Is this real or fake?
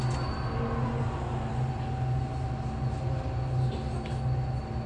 real